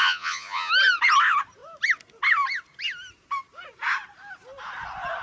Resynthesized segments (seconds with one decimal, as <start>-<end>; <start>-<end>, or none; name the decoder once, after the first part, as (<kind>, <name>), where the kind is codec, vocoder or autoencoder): 0.0-0.7 (vocoder, Vocos)